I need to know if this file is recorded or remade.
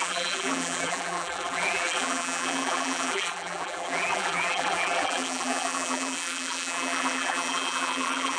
remade